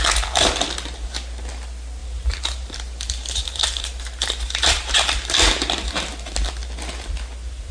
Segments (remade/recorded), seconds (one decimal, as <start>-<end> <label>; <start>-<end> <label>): 0.0-2.0 recorded; 2.0-6.3 remade; 6.3-7.7 recorded